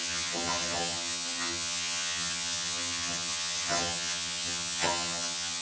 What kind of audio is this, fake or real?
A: fake